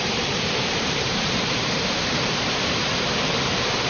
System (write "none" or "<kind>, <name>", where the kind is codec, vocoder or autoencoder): vocoder, BigVGAN v2